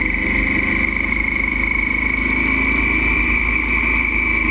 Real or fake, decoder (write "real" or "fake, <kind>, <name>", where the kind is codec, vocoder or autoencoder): real